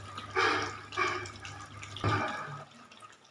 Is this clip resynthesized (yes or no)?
no